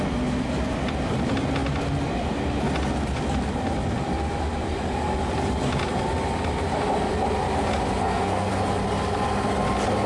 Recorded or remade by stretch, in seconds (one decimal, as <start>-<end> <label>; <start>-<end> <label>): 0.0-8.0 recorded; 8.0-8.5 remade; 8.5-10.1 recorded